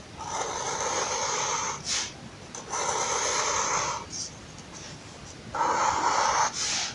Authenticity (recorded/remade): recorded